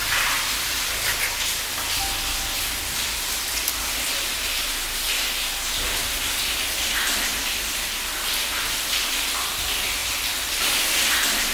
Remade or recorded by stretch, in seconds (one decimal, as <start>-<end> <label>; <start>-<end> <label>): 0.0-10.0 recorded; 10.0-10.5 remade; 10.5-11.5 recorded